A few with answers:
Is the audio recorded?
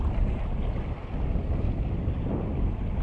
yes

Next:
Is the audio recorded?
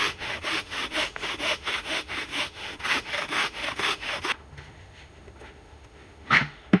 no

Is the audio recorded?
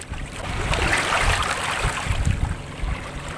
yes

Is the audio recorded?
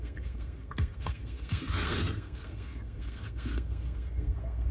no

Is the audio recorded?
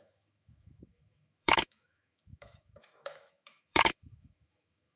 no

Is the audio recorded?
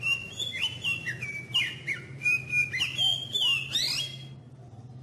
yes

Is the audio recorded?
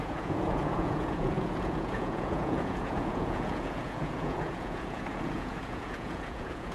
no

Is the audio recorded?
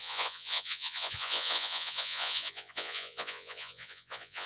no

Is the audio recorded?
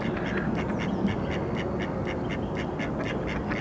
yes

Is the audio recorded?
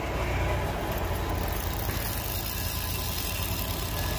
yes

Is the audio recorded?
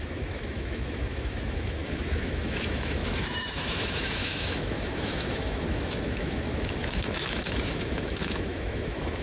no